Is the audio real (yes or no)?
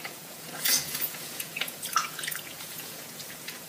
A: no